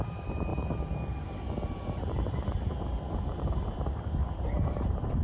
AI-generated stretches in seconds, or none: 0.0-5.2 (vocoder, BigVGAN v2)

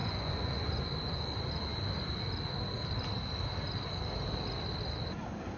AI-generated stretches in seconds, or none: 0.0-0.6 (vocoder, Vocos)